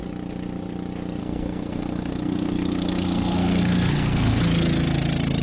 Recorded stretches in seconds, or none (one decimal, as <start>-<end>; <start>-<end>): 0.0-1.2; 4.4-5.4